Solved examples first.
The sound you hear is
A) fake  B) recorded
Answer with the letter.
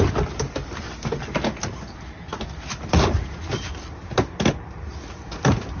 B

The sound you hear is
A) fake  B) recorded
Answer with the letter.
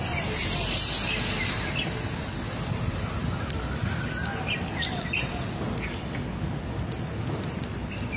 B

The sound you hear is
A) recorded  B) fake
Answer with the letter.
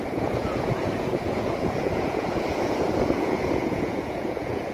B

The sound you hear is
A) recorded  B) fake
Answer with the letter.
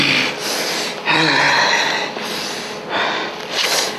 B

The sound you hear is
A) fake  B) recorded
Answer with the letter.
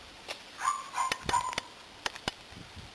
B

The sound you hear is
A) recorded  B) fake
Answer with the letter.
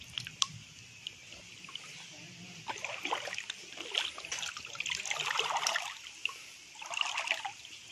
A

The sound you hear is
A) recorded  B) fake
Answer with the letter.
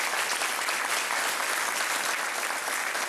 A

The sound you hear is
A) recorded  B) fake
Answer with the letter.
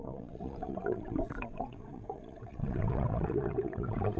B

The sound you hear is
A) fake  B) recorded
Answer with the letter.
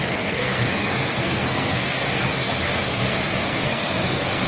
A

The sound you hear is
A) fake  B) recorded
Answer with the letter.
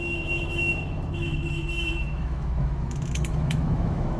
A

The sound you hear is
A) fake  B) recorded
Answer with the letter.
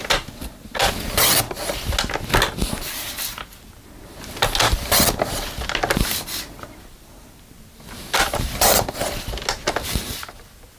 B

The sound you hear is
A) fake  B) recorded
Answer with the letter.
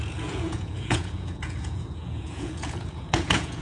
A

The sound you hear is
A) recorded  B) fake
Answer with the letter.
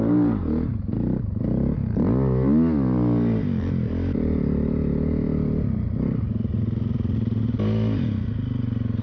A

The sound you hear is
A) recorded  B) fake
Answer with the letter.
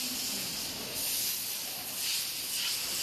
A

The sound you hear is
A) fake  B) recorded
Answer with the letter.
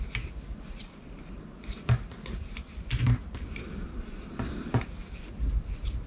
B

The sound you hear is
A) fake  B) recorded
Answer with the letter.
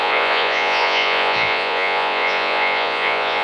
A